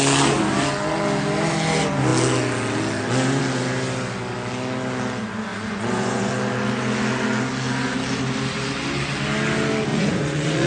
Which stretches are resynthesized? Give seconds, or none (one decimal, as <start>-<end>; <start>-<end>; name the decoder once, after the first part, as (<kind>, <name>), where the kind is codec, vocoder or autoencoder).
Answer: 5.5-6.3 (vocoder, Vocos); 9.9-10.7